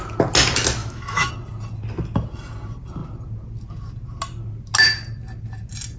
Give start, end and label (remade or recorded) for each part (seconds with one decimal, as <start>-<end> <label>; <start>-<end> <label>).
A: 0.0-0.8 recorded; 0.8-1.3 remade; 1.3-6.0 recorded